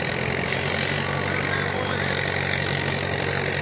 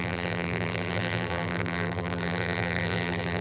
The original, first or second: first